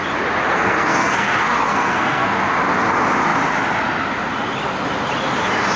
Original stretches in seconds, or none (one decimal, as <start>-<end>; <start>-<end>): 0.0-0.5; 2.4-5.8